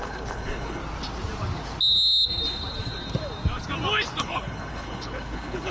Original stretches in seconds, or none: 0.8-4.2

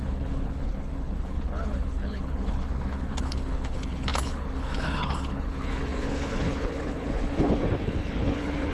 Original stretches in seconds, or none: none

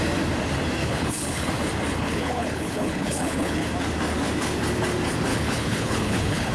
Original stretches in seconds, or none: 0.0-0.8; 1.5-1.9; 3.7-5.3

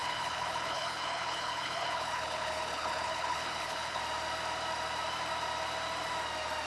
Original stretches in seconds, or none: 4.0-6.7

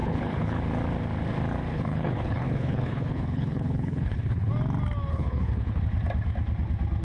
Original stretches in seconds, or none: 0.6-1.7; 4.5-5.1; 5.8-7.0

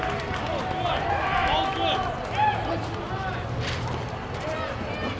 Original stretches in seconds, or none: 0.0-5.2

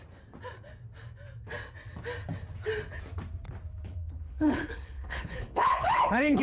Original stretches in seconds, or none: 0.0-3.7

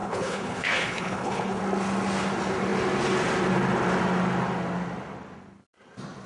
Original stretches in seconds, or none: 1.6-6.3